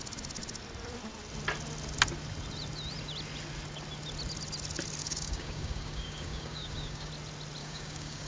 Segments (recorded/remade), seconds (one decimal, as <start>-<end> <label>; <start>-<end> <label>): 0.0-5.0 recorded; 5.0-7.1 remade; 7.1-7.6 recorded; 7.6-8.3 remade